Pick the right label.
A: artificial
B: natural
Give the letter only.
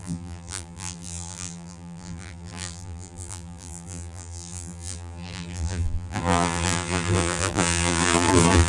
A